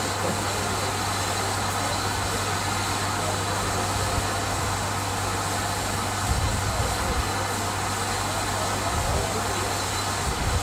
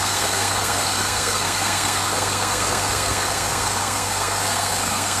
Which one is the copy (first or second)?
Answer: second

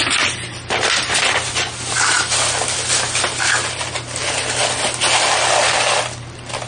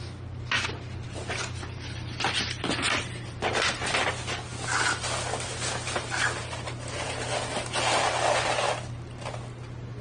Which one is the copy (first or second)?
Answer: first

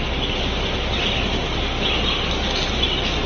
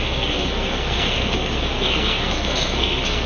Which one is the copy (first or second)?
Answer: second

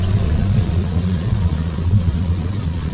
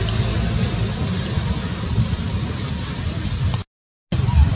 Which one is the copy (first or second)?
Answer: first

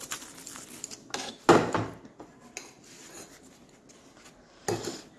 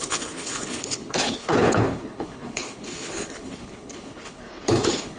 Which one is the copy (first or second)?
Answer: second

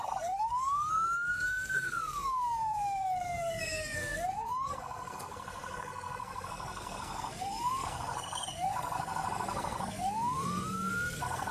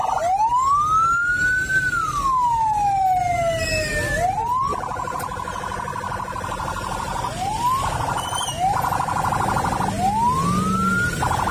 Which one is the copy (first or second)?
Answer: first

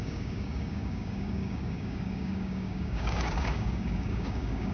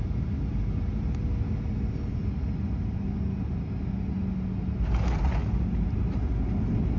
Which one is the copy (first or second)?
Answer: first